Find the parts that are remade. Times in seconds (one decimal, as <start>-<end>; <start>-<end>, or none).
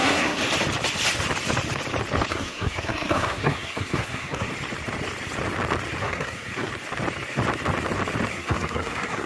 0.0-0.4; 2.3-4.5; 6.0-6.7; 8.3-9.3